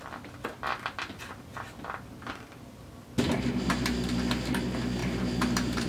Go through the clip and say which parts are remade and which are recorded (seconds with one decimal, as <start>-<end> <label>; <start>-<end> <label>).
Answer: 0.0-5.0 recorded; 5.0-5.9 remade

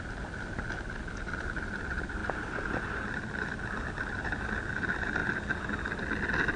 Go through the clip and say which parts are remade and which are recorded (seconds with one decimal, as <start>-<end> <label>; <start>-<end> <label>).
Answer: 0.0-2.2 recorded; 2.2-4.5 remade; 4.5-5.2 recorded; 5.2-6.0 remade; 6.0-6.6 recorded

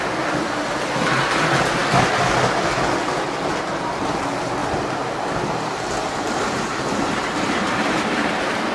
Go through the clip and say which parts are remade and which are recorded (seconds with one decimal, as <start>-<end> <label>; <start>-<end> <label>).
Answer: 0.0-4.6 recorded; 4.6-8.7 remade

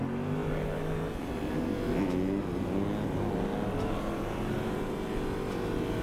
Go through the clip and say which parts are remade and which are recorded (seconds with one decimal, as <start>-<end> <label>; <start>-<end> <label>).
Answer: 0.0-6.0 recorded

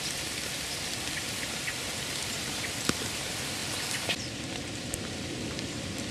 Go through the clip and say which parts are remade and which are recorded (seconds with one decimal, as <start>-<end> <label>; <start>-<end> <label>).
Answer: 0.0-3.6 remade; 3.6-4.2 recorded; 4.2-6.1 remade

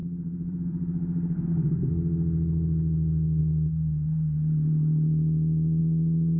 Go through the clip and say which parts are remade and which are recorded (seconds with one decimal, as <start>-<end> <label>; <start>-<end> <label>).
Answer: 0.0-1.9 remade; 1.9-6.4 recorded